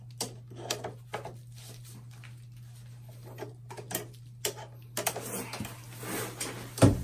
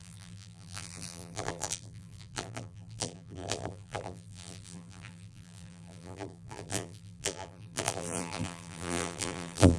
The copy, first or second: second